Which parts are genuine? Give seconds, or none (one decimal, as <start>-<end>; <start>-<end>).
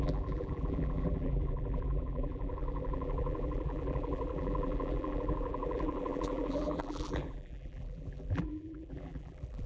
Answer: none